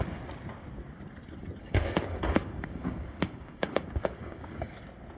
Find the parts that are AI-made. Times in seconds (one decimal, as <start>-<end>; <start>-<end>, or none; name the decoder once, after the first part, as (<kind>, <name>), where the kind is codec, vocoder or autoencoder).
1.6-4.7 (codec, DAC)